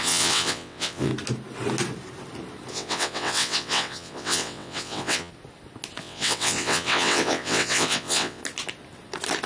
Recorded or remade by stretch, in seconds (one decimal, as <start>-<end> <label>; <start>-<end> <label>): 0.0-1.1 remade; 1.1-2.7 recorded; 2.7-5.3 remade; 5.3-6.0 recorded; 6.0-8.4 remade; 8.4-9.5 recorded